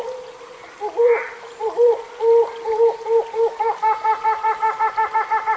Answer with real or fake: real